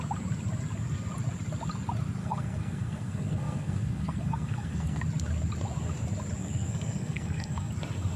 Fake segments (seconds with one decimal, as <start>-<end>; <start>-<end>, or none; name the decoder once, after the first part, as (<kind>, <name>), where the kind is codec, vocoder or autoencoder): 2.2-5.0 (codec, SNAC); 6.4-7.7